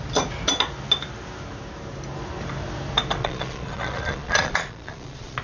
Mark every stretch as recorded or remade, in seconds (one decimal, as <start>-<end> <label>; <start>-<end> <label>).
0.0-3.2 recorded; 3.2-5.4 remade